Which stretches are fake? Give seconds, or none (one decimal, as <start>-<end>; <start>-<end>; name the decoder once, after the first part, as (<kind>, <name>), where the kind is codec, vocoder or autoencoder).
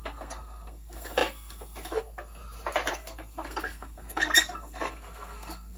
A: 0.0-2.4 (codec, SNAC); 2.9-5.8